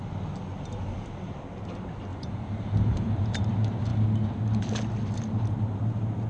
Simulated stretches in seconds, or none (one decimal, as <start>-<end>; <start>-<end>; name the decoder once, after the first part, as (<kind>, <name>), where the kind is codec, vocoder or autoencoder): 2.1-3.4 (vocoder, BigVGAN v2)